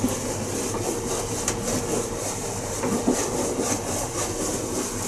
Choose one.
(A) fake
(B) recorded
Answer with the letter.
B